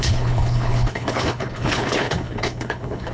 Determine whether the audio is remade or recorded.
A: remade